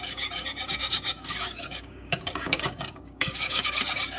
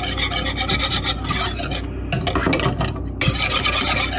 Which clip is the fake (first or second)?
first